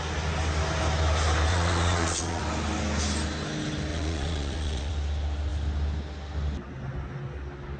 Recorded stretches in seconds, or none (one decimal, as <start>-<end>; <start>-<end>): 0.0-1.5; 2.4-3.9; 4.9-7.8